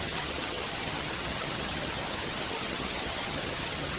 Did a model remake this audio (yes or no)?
yes